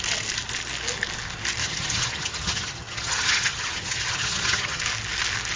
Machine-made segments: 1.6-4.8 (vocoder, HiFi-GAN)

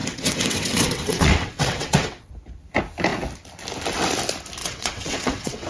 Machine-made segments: 0.0-2.3 (vocoder, WaveNeXt); 4.6-5.7